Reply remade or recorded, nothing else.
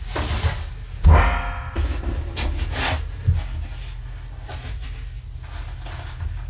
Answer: recorded